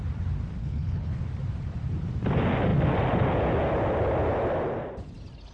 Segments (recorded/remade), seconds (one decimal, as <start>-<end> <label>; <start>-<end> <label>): 0.0-0.6 recorded; 0.6-1.2 remade; 1.2-5.5 recorded